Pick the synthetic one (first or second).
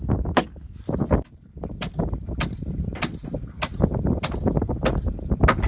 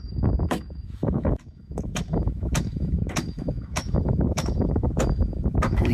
second